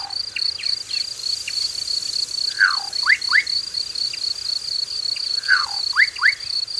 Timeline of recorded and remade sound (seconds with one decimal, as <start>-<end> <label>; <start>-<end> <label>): 0.0-5.3 recorded; 5.3-5.8 remade; 5.8-6.8 recorded